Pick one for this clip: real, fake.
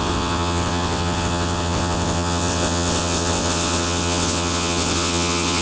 fake